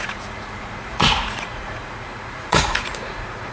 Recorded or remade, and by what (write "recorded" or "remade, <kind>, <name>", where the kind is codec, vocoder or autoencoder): remade, vocoder, Vocos